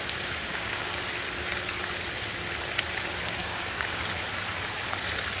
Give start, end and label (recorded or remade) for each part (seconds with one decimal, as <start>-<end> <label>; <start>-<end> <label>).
0.0-0.5 recorded; 0.5-1.0 remade; 1.0-3.4 recorded; 3.4-4.0 remade; 4.0-5.4 recorded